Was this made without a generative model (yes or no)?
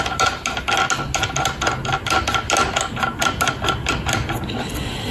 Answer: yes